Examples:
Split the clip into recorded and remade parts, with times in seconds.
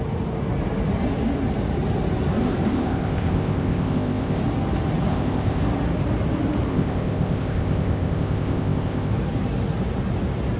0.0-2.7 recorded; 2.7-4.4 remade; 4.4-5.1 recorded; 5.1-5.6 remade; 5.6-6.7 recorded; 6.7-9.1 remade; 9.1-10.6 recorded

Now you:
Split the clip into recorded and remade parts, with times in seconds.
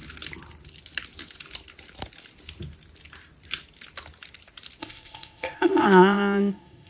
0.0-4.8 recorded; 4.8-6.9 remade